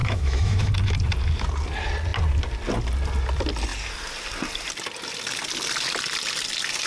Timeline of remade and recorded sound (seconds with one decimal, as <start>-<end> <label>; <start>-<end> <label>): 0.0-0.7 remade; 0.7-6.9 recorded

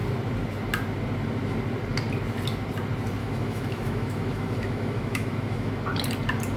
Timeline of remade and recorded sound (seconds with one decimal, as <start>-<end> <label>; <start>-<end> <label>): 0.0-3.2 recorded; 3.2-5.7 remade; 5.7-6.6 recorded

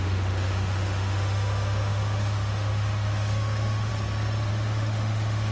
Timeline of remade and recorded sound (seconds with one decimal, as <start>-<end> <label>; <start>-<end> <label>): 0.0-3.9 remade; 3.9-4.5 recorded; 4.5-5.5 remade